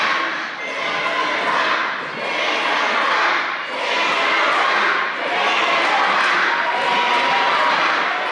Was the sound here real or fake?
real